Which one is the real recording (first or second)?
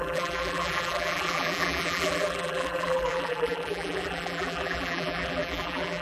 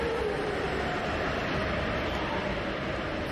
second